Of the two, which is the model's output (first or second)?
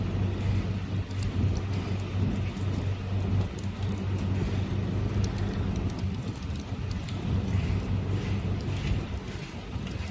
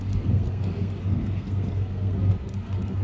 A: second